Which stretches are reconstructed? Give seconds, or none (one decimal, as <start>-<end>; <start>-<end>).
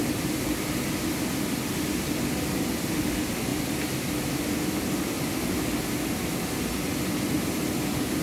none